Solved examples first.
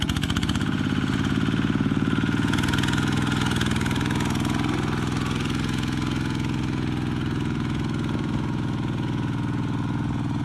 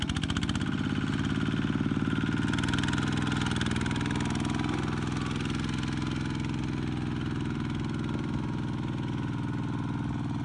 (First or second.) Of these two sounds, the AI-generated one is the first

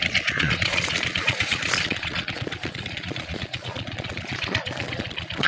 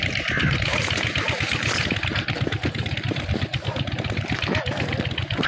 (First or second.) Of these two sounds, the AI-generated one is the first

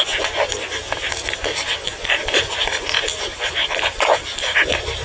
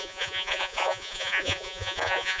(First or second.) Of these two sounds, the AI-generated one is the second